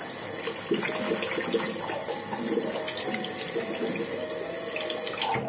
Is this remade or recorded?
recorded